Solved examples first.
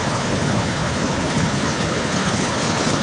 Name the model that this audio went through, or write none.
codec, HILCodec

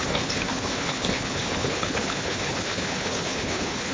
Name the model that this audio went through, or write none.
codec, HILCodec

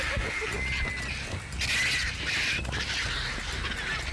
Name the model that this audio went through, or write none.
none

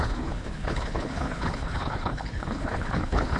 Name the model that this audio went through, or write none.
codec, HILCodec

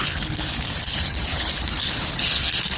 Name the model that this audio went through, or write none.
codec, HILCodec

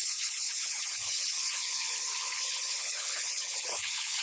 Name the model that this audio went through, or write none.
codec, HILCodec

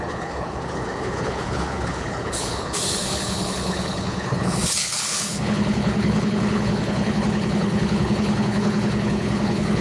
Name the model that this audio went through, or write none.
codec, HILCodec